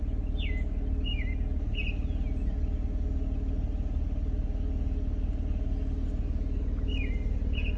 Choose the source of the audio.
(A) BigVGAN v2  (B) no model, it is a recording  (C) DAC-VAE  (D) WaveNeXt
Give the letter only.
B